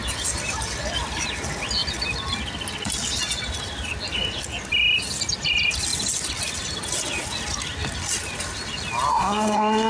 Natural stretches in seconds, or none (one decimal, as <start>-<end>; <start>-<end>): 0.0-9.1